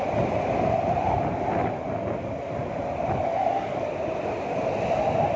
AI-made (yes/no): no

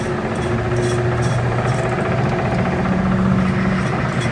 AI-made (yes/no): no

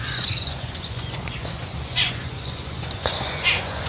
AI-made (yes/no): yes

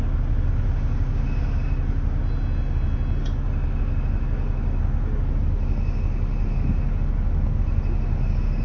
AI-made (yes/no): no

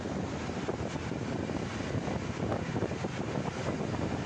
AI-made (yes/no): no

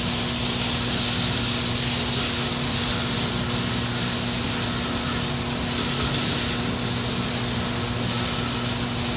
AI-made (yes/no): no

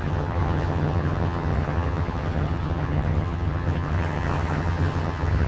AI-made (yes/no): yes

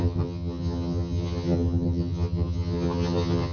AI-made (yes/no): yes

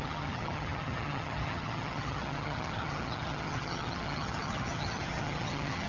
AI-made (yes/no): yes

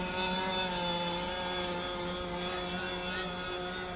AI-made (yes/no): no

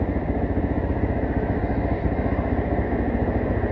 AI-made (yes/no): yes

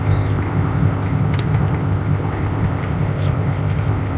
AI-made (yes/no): yes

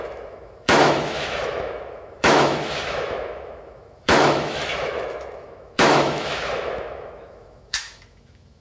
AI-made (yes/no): yes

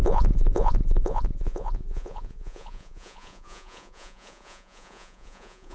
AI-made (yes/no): yes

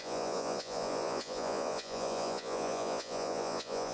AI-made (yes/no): yes